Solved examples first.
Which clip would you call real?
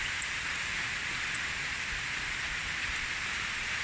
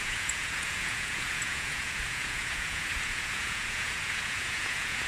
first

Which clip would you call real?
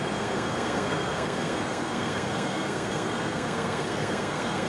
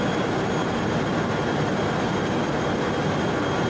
second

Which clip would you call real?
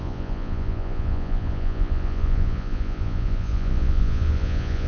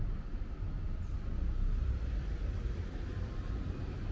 second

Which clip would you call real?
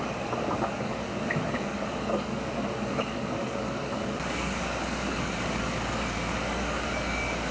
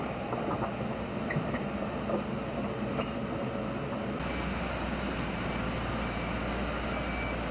second